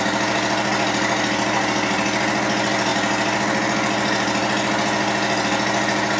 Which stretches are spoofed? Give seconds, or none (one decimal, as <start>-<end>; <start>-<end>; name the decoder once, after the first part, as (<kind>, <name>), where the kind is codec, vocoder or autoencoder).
none